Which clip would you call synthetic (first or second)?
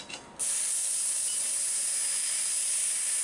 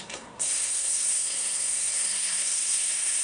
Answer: second